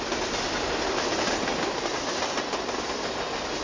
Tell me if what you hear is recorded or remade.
recorded